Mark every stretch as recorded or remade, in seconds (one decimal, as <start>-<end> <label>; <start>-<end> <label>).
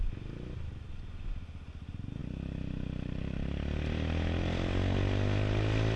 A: 0.0-6.0 recorded